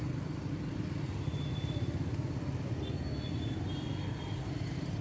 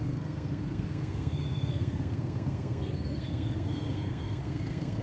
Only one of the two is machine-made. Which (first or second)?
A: second